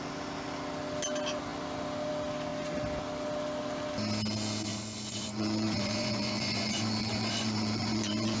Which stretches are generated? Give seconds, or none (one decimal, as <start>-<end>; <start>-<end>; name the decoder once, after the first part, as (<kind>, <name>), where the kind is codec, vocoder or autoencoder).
4.7-8.4 (vocoder, Vocos)